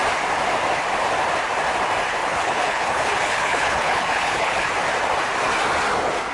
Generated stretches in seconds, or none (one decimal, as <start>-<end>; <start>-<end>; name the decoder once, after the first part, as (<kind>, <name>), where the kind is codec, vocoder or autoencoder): 2.2-4.7 (codec, HILCodec)